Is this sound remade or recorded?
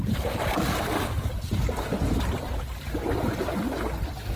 recorded